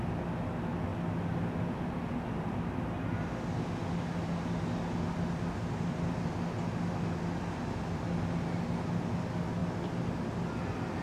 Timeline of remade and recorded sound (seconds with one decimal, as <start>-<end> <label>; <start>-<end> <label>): 0.0-11.0 recorded